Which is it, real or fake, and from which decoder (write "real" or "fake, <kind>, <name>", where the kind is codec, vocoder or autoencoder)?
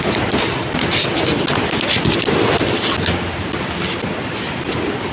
real